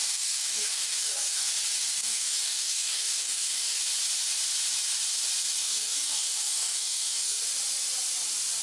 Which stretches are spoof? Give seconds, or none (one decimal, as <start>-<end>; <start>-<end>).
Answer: 0.0-1.5; 2.0-3.8; 5.6-7.4